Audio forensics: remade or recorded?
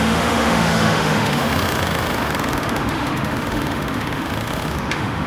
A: remade